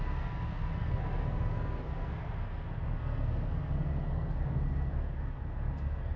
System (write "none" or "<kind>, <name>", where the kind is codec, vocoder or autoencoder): codec, SNAC